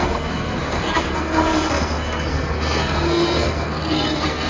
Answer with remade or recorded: remade